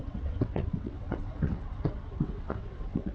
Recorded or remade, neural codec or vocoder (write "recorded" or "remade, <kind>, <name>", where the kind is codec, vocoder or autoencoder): remade, vocoder, WaveNeXt